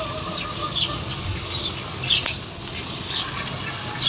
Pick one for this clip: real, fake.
real